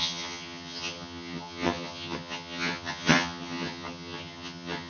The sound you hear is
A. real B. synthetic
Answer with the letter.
B